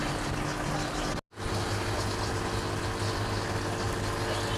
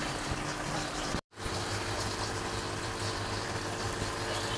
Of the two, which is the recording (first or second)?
first